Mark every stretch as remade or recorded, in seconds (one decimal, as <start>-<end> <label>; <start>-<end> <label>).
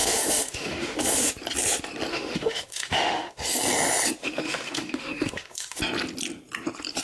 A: 0.0-1.3 remade; 1.3-2.1 recorded; 2.1-3.4 remade; 3.4-4.2 recorded; 4.2-5.8 remade; 5.8-7.0 recorded